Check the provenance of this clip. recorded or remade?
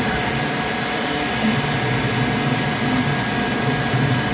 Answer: recorded